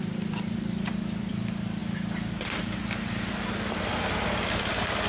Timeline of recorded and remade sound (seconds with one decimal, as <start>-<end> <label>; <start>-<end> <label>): 0.0-5.1 remade

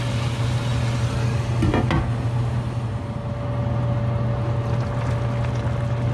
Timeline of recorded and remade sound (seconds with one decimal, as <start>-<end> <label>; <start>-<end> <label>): 0.0-6.1 recorded

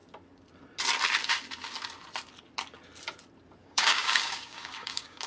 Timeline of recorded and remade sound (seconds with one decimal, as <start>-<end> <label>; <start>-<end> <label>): 0.0-3.6 recorded; 3.6-5.3 remade

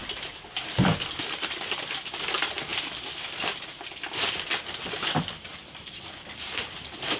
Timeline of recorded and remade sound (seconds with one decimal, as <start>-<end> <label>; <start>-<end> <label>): 0.0-7.2 recorded

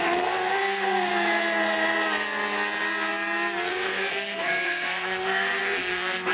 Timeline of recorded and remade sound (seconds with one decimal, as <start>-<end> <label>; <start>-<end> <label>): 0.0-1.1 remade; 1.1-3.7 recorded; 3.7-6.3 remade